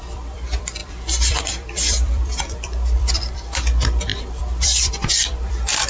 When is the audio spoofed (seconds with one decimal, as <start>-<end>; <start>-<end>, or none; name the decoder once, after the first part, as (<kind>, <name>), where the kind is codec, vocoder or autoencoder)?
0.0-5.9 (vocoder, BigVGAN v2)

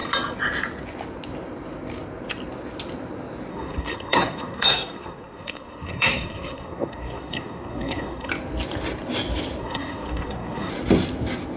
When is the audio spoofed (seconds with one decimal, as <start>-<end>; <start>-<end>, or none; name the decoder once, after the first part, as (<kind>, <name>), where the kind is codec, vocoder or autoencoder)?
3.5-8.3 (codec, SNAC); 9.6-10.7